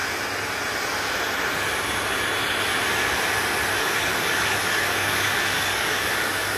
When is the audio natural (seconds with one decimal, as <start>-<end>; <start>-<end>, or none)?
0.0-3.7